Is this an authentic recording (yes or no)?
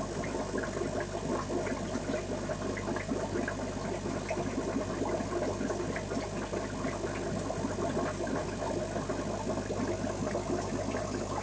yes